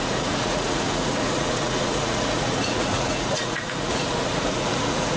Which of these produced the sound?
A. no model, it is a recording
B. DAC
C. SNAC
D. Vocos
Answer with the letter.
D